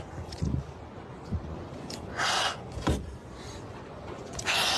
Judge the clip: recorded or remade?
remade